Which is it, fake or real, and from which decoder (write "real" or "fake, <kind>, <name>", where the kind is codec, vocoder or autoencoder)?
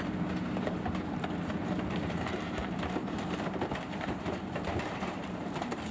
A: fake, vocoder, BigVGAN v2